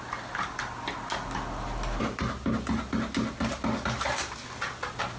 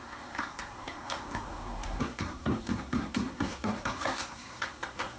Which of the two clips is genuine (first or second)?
first